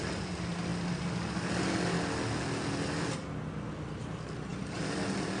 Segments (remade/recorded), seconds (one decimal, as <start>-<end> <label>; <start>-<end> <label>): 0.0-5.4 recorded